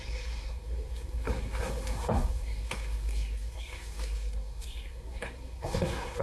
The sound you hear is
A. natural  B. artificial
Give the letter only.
B